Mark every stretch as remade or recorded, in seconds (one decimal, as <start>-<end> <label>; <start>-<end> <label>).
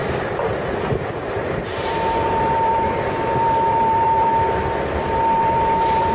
0.0-1.3 recorded; 1.3-4.3 remade; 4.3-5.4 recorded; 5.4-6.1 remade